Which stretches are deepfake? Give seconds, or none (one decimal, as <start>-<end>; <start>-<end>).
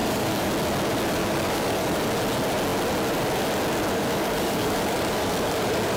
0.0-0.5; 1.2-2.0; 3.9-6.0